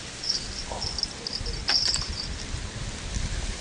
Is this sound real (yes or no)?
yes